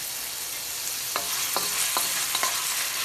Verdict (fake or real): real